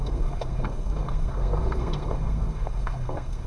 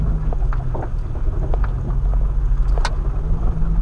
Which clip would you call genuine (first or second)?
second